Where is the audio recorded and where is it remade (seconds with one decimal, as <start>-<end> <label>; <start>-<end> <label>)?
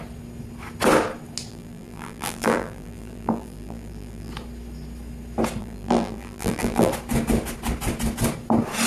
0.0-1.5 recorded; 1.5-4.3 remade; 4.3-5.6 recorded; 5.6-6.9 remade; 6.9-8.9 recorded